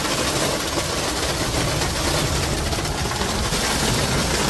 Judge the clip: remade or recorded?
recorded